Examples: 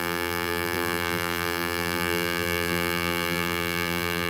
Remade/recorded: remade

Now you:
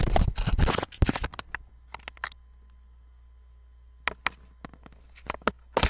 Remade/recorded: recorded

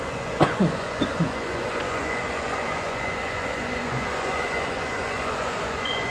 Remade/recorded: remade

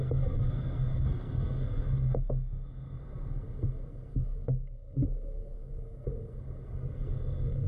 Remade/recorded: remade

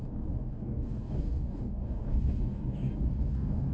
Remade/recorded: remade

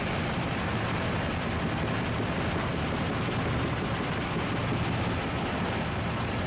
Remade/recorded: recorded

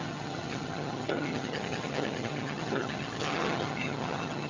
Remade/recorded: remade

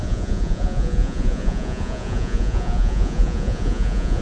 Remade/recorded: remade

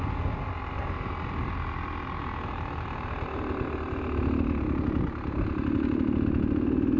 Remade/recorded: recorded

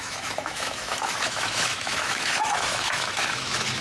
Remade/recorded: remade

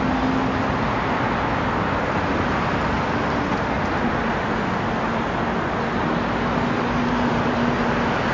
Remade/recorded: recorded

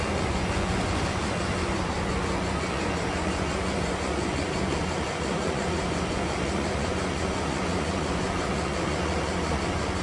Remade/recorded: remade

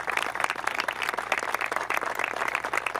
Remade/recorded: recorded